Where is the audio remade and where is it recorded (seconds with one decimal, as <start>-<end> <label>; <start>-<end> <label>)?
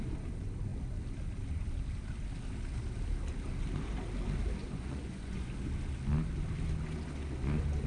0.0-4.6 recorded; 4.6-5.5 remade; 5.5-7.9 recorded